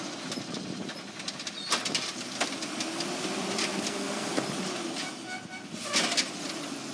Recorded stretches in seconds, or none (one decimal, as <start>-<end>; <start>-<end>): 0.0-3.7; 4.4-6.9